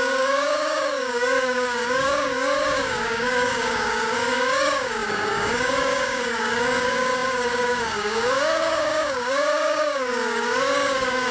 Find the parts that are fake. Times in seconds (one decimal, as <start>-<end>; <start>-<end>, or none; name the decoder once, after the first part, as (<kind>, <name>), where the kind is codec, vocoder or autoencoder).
0.0-11.3 (codec, DAC)